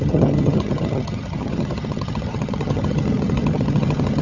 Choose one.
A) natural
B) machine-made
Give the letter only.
B